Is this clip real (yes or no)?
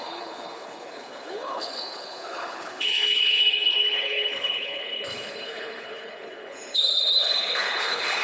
no